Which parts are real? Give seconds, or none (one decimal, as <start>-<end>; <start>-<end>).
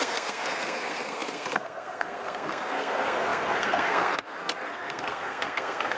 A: none